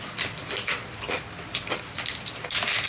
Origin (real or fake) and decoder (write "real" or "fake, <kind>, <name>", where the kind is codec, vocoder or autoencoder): real